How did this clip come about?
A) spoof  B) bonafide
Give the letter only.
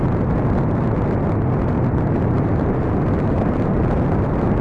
A